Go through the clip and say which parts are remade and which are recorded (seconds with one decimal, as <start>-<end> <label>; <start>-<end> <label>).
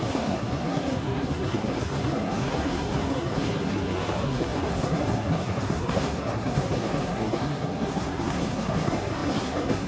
0.0-9.9 remade